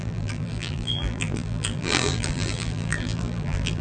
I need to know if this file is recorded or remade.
remade